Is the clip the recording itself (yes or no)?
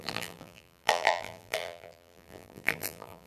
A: no